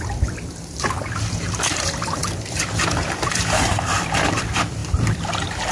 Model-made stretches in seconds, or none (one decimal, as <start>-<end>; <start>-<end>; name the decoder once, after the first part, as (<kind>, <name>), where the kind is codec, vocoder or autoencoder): 0.0-5.7 (vocoder, BigVGAN v2)

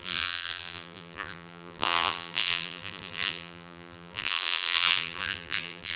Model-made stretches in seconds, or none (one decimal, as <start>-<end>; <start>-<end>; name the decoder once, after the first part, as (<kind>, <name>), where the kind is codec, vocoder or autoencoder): 0.0-6.0 (vocoder, BigVGAN v2)

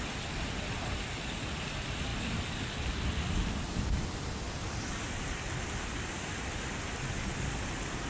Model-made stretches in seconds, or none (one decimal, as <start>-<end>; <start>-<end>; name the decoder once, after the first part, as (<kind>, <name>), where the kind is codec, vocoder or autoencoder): 2.1-5.8 (vocoder, BigVGAN v2)

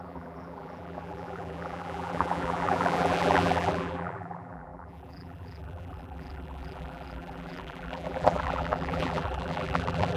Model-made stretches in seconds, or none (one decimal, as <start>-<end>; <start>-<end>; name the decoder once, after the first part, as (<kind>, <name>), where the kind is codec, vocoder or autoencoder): 0.0-10.2 (vocoder, BigVGAN v2)